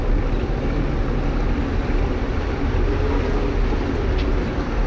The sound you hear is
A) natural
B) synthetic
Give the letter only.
A